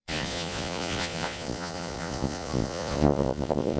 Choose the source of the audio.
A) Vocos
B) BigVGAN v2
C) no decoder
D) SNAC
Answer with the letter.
A